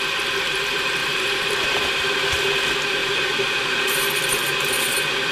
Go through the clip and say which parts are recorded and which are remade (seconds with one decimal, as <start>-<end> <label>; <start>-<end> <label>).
0.0-1.0 recorded; 1.0-2.0 remade; 2.0-3.0 recorded; 3.0-4.5 remade; 4.5-5.3 recorded